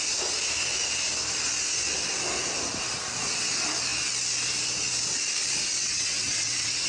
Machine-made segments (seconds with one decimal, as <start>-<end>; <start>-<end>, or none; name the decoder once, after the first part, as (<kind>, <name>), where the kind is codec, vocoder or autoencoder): 5.8-6.9 (vocoder, WaveNeXt)